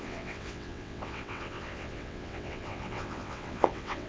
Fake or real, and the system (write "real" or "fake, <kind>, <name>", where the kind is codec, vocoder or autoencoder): fake, vocoder, WaveNeXt